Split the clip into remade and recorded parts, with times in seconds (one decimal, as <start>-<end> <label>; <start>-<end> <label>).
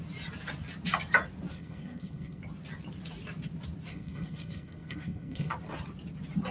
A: 0.0-1.5 recorded; 1.5-2.4 remade; 2.4-3.9 recorded; 3.9-5.5 remade; 5.5-6.5 recorded